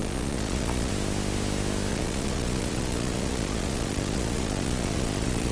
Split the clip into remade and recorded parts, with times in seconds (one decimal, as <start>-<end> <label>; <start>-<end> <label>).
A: 0.0-0.9 remade; 0.9-1.9 recorded; 1.9-5.5 remade